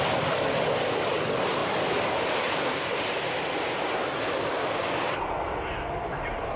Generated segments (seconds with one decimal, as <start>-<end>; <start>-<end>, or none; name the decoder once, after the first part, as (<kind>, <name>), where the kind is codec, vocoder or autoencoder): 1.6-5.3 (vocoder, BigVGAN v2)